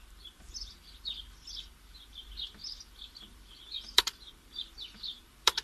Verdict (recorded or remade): remade